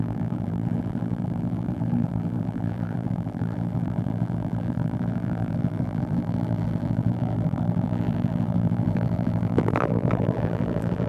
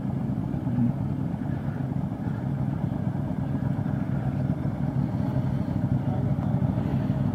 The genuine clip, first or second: second